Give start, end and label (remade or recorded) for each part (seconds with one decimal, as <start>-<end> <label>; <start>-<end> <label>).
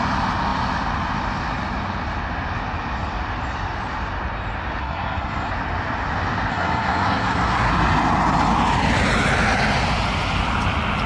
0.0-4.8 recorded; 4.8-5.5 remade; 5.5-6.5 recorded; 6.5-7.7 remade; 7.7-11.1 recorded